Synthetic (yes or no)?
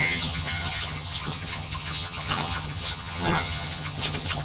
yes